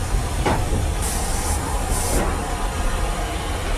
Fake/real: real